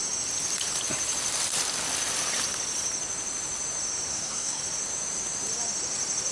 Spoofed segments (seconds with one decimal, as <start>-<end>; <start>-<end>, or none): 4.1-4.6